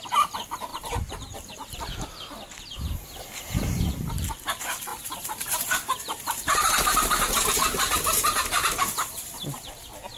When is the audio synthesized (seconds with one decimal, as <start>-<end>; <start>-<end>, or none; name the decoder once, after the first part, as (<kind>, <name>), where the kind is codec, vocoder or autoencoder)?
0.7-1.8 (vocoder, BigVGAN v2); 4.9-9.7